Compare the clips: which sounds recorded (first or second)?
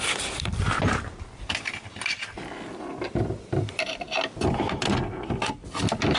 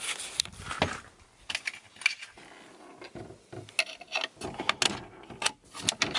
second